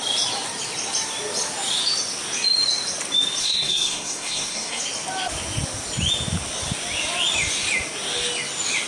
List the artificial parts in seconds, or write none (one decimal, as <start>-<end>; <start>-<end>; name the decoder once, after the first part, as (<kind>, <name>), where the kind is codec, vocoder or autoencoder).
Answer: 3.4-4.8 (codec, SNAC)